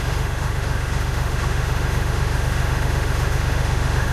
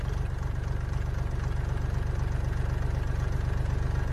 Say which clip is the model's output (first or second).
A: first